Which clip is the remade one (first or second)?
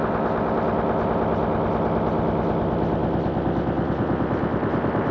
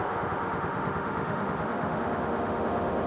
second